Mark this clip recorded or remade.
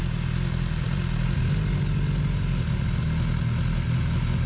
recorded